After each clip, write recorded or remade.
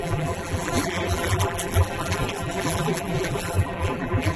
remade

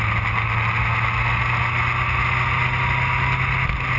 recorded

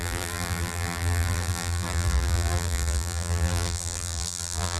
remade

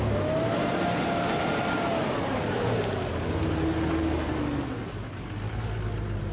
recorded